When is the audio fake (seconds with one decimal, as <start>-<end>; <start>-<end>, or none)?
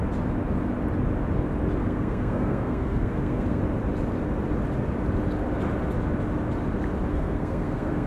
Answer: 1.8-3.6; 7.1-8.1